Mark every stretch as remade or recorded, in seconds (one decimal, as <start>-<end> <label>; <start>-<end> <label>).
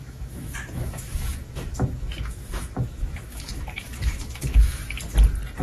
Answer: 0.0-4.8 remade; 4.8-5.6 recorded